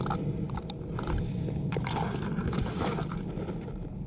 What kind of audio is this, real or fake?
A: real